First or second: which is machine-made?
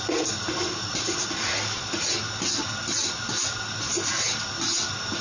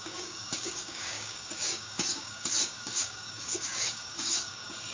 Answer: second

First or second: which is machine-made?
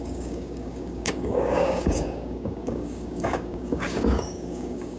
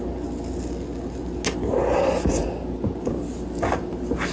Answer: first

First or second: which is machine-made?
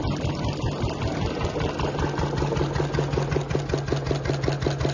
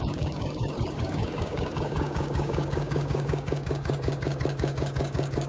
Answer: second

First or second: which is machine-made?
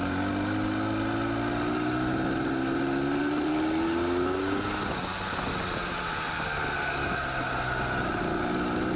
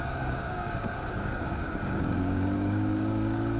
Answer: second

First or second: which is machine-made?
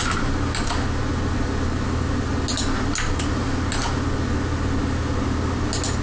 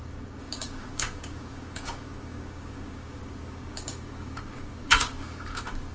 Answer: second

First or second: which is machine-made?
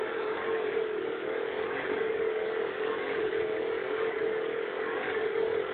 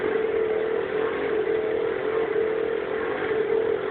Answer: first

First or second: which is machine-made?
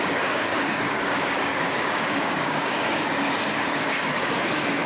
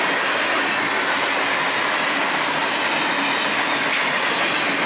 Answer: first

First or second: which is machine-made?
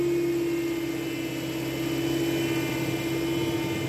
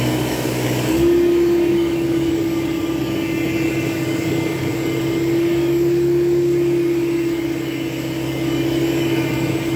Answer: second